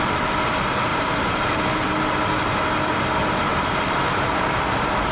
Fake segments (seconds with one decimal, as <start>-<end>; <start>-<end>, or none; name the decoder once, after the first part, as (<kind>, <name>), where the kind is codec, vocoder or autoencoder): 0.9-1.7 (vocoder, BigVGAN v2); 3.5-4.5